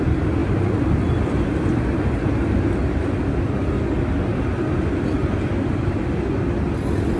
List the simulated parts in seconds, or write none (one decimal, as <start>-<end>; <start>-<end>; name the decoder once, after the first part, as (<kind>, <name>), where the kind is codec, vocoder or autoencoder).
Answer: 0.4-1.4 (vocoder, BigVGAN v2); 2.8-3.4